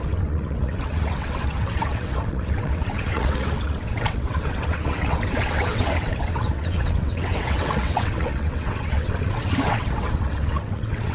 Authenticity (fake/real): fake